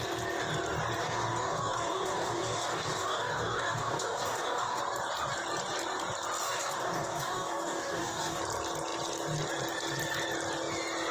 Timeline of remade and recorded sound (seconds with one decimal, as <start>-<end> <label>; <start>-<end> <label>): 0.0-1.0 recorded; 1.0-4.8 remade; 4.8-6.4 recorded; 6.4-8.4 remade; 8.4-11.1 recorded